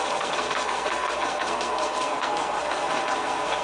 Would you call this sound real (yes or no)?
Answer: no